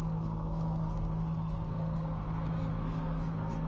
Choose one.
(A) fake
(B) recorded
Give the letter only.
A